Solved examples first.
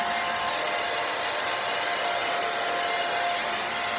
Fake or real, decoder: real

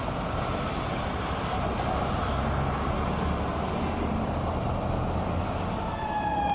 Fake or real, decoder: real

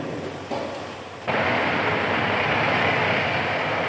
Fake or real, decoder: real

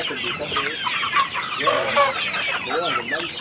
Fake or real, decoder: real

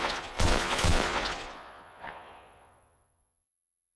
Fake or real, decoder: fake, vocoder, Vocos